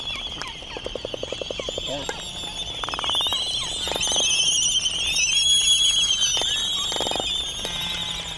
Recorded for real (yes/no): yes